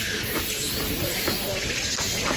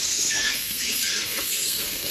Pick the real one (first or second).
first